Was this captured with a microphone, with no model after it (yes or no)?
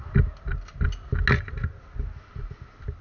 yes